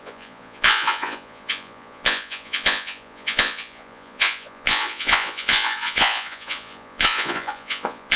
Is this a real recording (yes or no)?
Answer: no